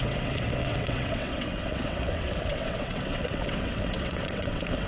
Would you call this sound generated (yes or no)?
yes